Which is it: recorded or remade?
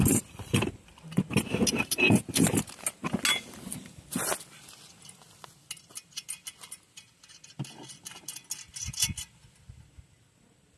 recorded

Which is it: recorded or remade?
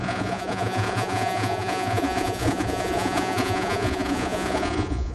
remade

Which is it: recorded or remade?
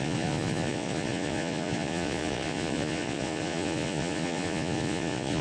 remade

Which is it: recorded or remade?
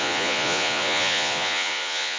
remade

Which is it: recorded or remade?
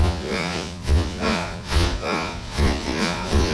remade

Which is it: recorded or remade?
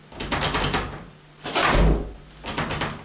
recorded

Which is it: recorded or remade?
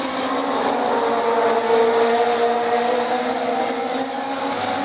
recorded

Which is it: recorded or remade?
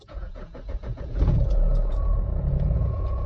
remade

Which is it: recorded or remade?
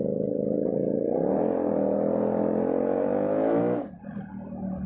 recorded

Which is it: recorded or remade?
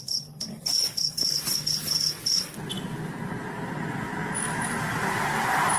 recorded